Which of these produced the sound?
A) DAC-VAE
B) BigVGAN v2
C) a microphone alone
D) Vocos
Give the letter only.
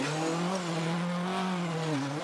C